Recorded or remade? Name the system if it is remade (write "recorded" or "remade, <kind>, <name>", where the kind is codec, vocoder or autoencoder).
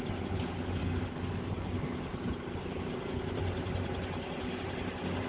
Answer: recorded